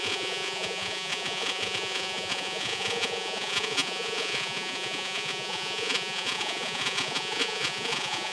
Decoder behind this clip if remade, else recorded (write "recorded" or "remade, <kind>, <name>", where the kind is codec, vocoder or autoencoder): remade, vocoder, Vocos